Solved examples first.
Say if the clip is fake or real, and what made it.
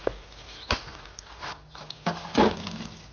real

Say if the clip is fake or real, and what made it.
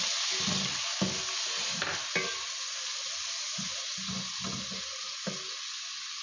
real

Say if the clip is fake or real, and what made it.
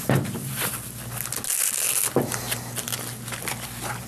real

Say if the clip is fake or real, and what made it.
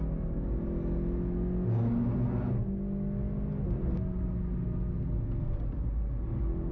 real